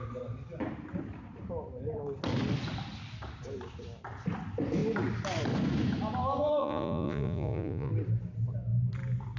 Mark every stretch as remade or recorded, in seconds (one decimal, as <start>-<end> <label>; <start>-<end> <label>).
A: 0.0-6.6 recorded; 6.6-7.9 remade; 7.9-9.4 recorded